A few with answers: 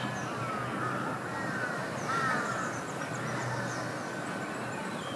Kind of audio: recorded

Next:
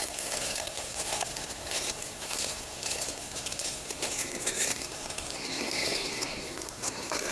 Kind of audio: remade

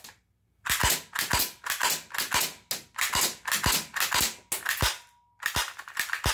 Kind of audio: recorded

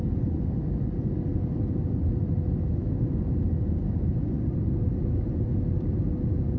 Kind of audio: recorded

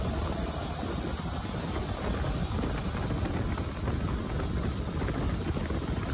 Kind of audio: recorded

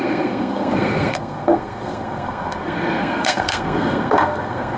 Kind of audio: remade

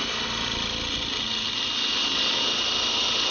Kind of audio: recorded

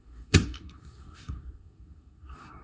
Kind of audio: remade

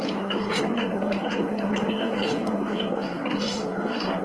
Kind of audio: remade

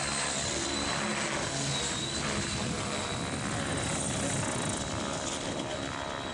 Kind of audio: recorded